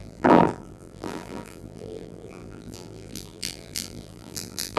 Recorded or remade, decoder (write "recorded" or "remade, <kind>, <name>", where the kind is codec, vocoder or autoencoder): remade, vocoder, BigVGAN v2